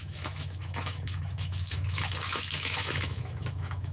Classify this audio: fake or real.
fake